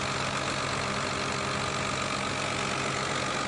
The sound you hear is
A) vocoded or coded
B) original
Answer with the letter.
B